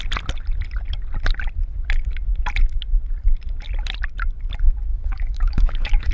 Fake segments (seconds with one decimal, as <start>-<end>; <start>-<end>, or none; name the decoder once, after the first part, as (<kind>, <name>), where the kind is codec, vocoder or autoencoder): 4.9-6.1 (autoencoder, DAC-VAE)